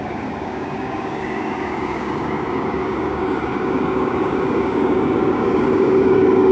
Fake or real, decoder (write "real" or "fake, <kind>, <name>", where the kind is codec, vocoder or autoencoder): fake, codec, DAC